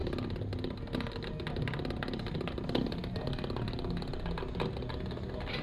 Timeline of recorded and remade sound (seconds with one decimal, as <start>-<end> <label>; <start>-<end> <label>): 0.0-5.6 recorded